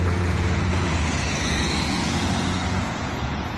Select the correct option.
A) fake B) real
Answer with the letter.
A